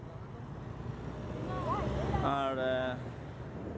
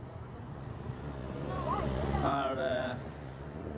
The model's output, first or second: second